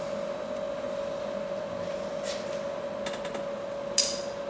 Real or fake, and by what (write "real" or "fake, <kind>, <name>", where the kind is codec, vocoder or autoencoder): real